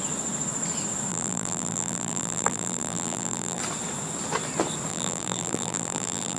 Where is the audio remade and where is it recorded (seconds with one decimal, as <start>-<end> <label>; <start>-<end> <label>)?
0.0-1.1 recorded; 1.1-3.6 remade; 3.6-4.9 recorded; 4.9-6.4 remade